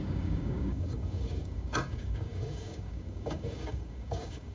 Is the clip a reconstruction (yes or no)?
yes